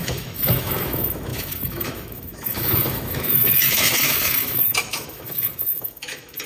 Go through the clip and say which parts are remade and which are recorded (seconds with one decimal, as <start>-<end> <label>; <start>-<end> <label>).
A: 0.0-6.5 remade